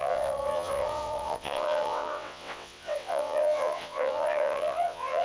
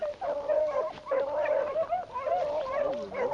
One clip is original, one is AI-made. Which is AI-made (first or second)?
first